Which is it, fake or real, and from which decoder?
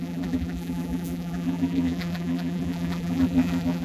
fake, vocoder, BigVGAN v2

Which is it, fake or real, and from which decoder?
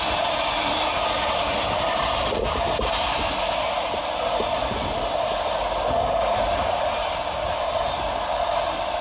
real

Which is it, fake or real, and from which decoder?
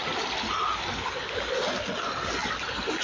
real